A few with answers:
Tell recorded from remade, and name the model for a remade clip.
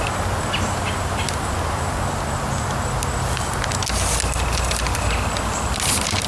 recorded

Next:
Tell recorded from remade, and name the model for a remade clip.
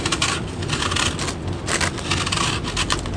recorded